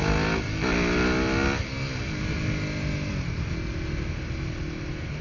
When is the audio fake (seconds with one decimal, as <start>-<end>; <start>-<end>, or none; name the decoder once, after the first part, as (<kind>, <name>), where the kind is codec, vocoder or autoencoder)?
none